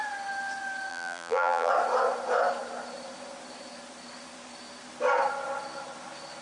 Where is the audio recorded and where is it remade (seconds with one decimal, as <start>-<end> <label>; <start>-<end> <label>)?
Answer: 0.0-0.9 recorded; 0.9-1.7 remade; 1.7-6.4 recorded